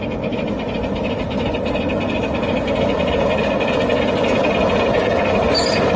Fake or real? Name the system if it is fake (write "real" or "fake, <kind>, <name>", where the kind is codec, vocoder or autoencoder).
real